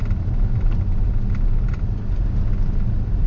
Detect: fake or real real